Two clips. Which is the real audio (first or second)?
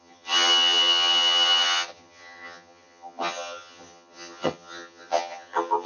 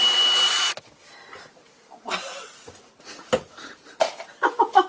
second